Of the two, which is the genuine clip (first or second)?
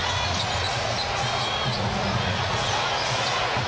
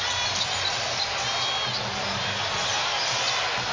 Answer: second